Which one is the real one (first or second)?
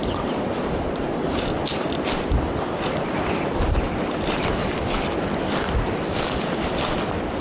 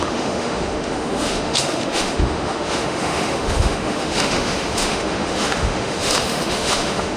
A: first